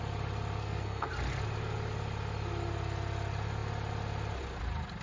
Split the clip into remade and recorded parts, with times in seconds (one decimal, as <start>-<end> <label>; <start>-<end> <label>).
0.0-0.6 recorded; 0.6-1.1 remade; 1.1-5.0 recorded